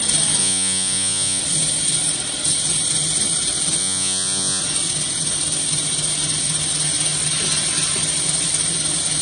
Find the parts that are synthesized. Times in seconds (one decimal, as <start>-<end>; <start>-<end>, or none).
0.4-1.4; 3.8-4.6